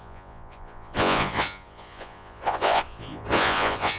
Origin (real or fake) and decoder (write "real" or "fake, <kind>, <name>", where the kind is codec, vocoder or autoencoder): fake, vocoder, Vocos